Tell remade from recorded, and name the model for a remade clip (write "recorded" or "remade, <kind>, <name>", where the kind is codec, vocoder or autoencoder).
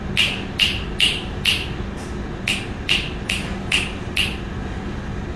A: recorded